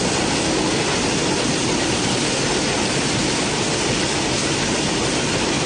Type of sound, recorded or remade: recorded